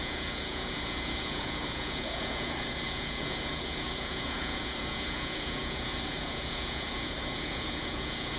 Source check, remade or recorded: remade